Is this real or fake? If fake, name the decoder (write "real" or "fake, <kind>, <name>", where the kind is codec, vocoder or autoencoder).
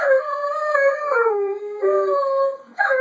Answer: fake, codec, SNAC